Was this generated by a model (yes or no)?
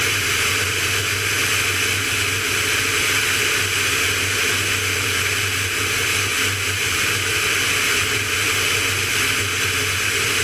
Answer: no